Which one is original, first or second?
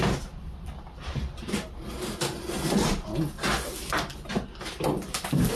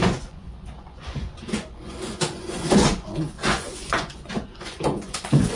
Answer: first